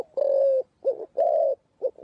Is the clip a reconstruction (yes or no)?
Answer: no